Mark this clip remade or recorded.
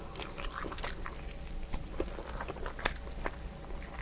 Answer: recorded